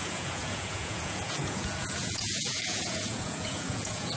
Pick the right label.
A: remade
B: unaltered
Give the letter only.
A